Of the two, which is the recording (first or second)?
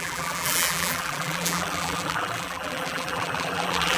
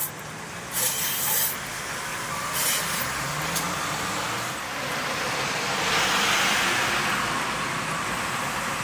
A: second